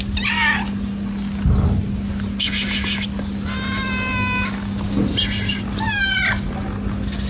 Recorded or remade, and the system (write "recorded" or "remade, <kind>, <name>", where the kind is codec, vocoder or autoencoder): recorded